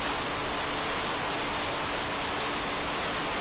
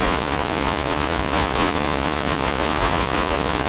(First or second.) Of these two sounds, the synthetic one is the second